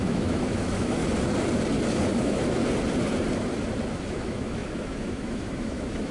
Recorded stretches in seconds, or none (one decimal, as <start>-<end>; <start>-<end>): 1.0-2.2; 2.6-3.9